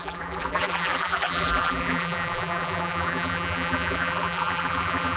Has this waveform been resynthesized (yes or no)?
yes